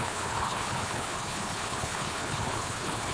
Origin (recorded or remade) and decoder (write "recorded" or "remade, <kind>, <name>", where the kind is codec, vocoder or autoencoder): remade, codec, HILCodec